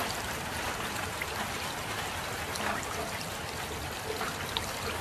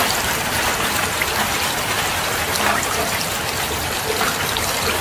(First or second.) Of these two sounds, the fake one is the first